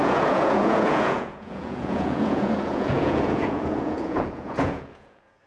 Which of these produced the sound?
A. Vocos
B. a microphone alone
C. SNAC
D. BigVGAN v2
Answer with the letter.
A